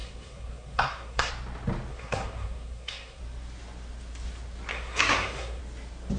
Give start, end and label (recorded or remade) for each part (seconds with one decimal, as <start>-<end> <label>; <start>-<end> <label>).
0.0-1.3 remade; 1.3-1.9 recorded; 1.9-3.2 remade; 3.2-4.7 recorded; 4.7-5.6 remade; 5.6-6.2 recorded